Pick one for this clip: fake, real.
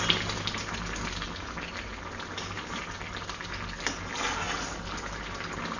real